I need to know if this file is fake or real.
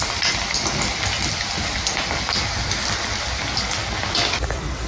real